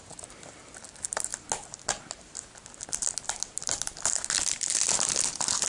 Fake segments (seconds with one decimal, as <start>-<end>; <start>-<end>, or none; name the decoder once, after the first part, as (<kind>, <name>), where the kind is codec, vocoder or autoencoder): none